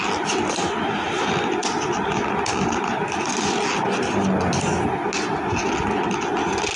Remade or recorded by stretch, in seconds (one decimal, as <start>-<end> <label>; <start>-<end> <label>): 0.0-6.8 recorded